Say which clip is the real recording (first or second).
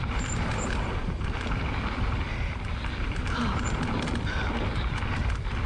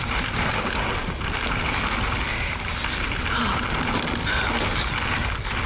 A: second